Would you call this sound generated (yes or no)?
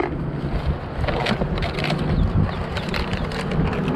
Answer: no